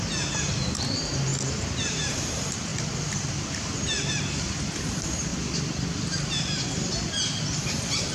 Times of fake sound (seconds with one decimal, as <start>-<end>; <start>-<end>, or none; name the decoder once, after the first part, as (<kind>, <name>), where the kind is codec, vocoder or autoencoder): 1.3-2.1 (vocoder, BigVGAN v2); 2.7-3.3; 5.3-6.4